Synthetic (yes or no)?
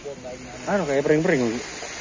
no